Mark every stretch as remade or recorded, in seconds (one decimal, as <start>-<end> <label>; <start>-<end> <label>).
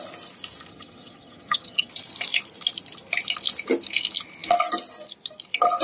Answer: 0.0-0.7 recorded; 0.7-1.9 remade; 1.9-5.8 recorded